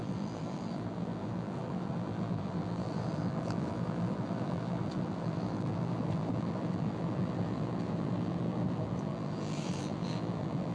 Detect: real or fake fake